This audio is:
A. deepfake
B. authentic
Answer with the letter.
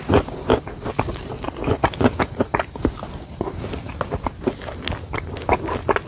B